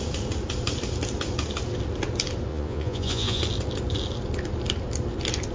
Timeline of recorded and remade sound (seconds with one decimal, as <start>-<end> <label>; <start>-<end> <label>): 0.0-2.5 recorded; 2.5-3.4 remade; 3.4-5.5 recorded